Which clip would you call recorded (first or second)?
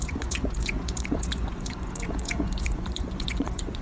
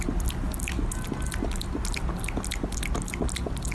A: second